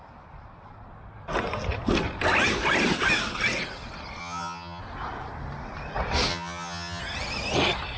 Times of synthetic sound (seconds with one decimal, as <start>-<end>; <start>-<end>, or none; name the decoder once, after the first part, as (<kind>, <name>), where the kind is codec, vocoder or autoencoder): 4.2-4.8 (vocoder, HiFi-GAN); 6.3-7.0